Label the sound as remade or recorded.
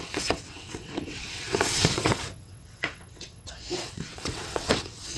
remade